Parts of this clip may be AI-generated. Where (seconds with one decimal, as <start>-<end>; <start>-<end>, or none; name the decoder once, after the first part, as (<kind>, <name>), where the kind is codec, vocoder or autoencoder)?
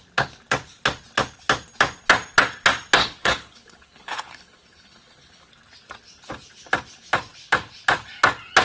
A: 3.0-5.5 (codec, HILCodec)